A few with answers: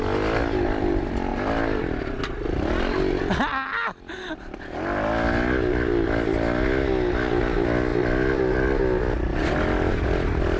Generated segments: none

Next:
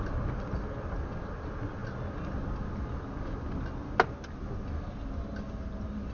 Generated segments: none

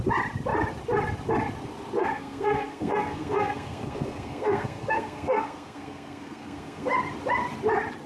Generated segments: 2.0-6.9 (codec, SNAC)